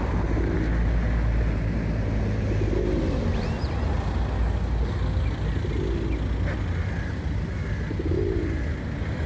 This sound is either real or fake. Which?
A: real